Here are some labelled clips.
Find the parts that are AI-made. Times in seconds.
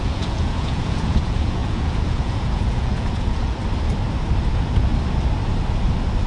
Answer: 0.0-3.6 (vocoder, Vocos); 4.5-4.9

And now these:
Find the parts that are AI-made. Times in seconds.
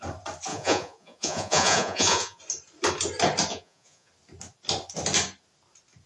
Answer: 0.5-2.4 (vocoder, Vocos); 3.5-4.1